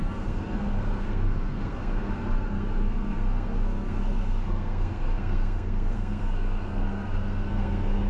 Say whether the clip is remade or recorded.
remade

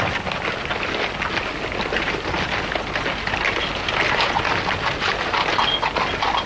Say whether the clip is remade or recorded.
recorded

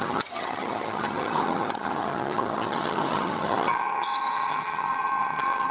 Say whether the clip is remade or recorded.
remade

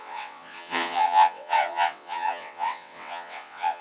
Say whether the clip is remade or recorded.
remade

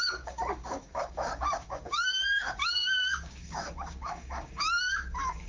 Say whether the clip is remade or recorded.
remade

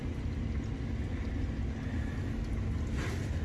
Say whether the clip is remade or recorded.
recorded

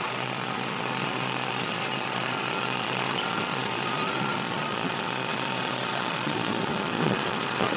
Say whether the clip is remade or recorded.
remade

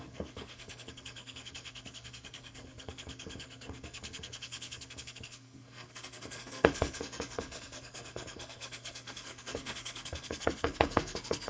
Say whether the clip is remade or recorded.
remade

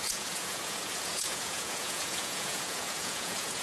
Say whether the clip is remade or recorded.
remade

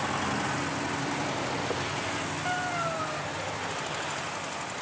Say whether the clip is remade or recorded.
recorded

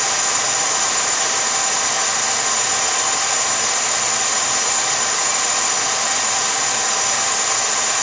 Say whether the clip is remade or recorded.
remade